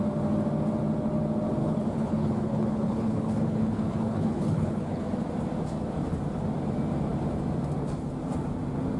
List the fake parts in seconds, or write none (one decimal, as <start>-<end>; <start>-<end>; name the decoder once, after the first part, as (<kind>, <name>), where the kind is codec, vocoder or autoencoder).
1.6-5.0 (codec, HILCodec)